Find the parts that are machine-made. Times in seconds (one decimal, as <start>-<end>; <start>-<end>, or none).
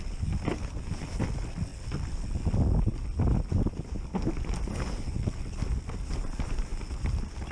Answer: none